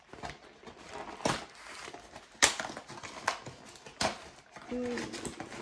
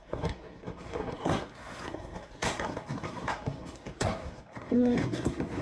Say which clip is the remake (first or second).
second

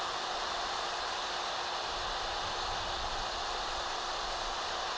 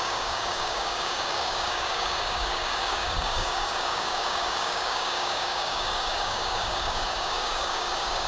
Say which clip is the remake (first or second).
second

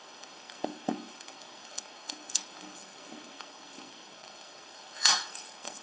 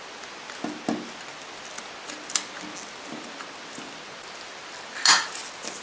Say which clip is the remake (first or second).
first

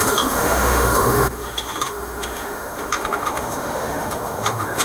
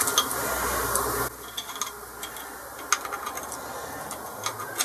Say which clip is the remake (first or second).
first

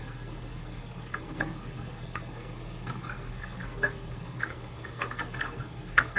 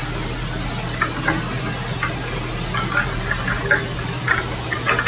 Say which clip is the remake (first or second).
first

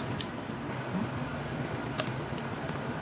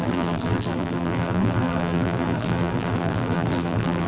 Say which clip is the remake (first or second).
second